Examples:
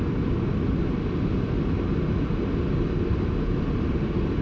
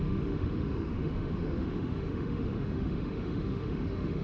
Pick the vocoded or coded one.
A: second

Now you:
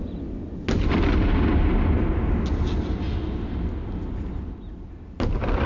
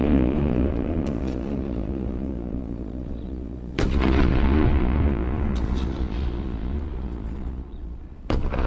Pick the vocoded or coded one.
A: second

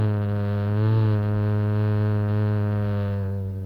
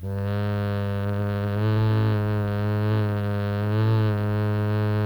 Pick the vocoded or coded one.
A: first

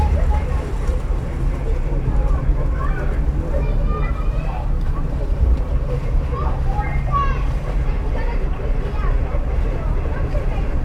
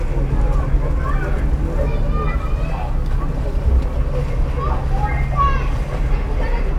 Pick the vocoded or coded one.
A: first